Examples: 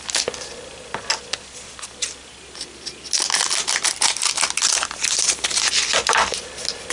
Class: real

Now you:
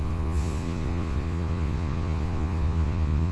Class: fake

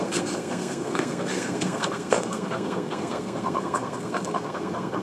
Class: fake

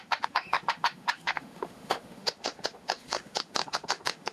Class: fake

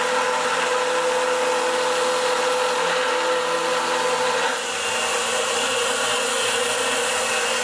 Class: real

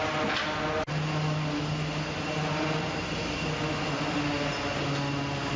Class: real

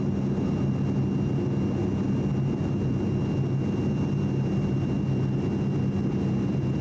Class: real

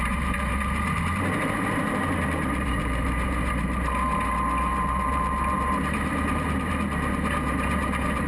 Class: fake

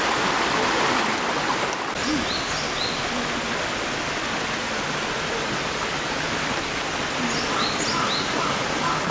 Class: real